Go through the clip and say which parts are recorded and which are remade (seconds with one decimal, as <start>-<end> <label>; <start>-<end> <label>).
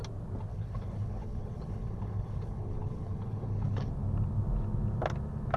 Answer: 0.0-0.5 recorded; 0.5-3.9 remade; 3.9-5.6 recorded